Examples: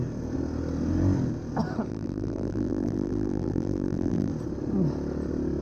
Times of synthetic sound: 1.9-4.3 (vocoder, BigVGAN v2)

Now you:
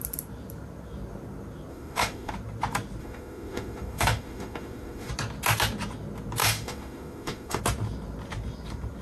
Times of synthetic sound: 1.7-2.3 (autoencoder, DAC-VAE); 3.0-5.1; 6.4-7.6

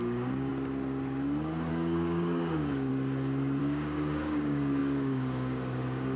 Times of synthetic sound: 0.0-0.5 (codec, DAC); 1.7-2.9; 3.6-6.2

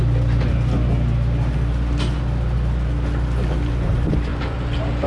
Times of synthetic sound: 4.3-5.1 (vocoder, BigVGAN v2)